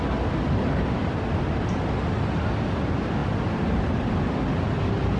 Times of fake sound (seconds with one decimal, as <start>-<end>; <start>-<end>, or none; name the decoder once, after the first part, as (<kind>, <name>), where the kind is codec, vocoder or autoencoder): none